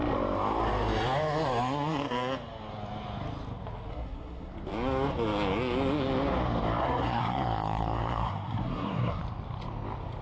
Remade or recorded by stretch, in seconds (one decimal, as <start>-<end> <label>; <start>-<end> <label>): 0.0-3.9 recorded; 3.9-4.5 remade; 4.5-6.8 recorded; 6.8-9.2 remade; 9.2-10.2 recorded